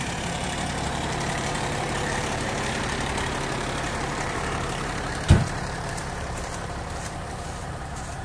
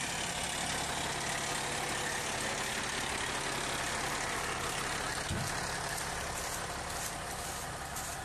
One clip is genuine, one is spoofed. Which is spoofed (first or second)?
first